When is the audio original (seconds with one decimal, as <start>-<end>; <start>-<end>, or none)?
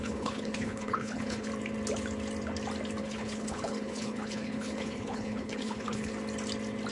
1.5-3.0; 6.1-6.9